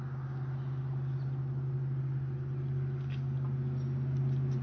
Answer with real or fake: real